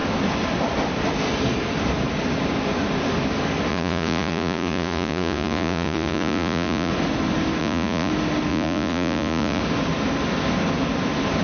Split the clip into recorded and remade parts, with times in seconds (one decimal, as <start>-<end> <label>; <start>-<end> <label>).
0.0-3.7 recorded; 3.7-6.9 remade; 6.9-7.6 recorded; 7.6-8.1 remade; 8.1-8.5 recorded; 8.5-9.6 remade; 9.6-11.4 recorded